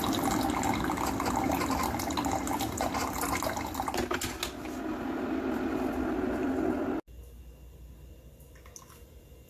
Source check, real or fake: real